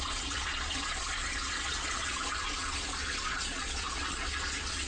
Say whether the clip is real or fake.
fake